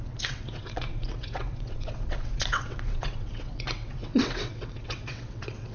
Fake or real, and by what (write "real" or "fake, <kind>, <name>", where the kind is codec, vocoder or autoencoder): fake, vocoder, WaveNeXt